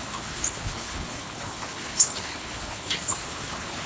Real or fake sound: fake